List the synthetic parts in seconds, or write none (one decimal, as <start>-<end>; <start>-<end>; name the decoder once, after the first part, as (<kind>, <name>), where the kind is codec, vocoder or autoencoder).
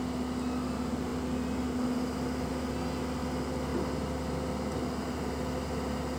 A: none